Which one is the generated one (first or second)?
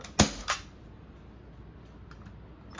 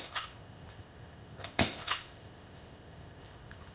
second